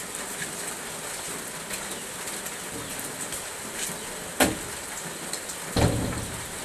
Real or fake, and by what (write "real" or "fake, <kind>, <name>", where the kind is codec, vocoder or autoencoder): real